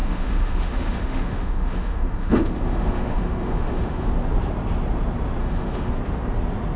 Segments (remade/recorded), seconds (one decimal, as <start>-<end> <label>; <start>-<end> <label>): 0.0-4.1 remade; 4.1-5.4 recorded; 5.4-5.9 remade; 5.9-6.8 recorded